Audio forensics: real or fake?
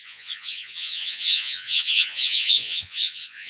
fake